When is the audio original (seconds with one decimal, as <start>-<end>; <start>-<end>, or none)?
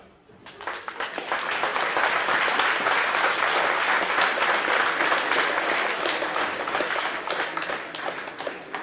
0.0-8.8